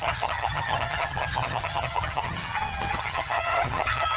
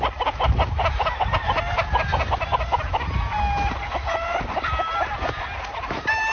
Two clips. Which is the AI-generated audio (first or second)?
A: first